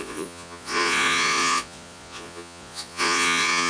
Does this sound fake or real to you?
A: fake